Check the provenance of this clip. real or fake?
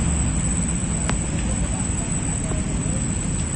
real